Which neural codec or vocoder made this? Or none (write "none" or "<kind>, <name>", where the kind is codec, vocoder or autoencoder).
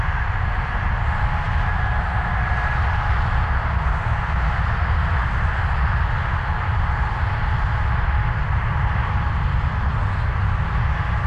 none